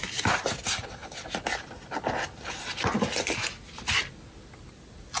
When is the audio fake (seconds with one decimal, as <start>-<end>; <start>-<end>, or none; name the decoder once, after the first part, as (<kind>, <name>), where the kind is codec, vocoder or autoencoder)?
none